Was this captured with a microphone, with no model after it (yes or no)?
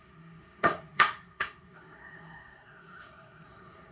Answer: no